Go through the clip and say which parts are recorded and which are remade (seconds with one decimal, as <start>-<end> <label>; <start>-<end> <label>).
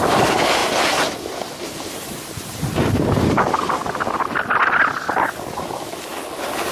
0.0-6.7 recorded